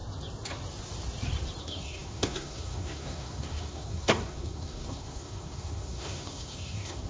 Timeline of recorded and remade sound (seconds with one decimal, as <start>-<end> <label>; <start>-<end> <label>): 0.0-1.6 recorded; 1.6-7.1 remade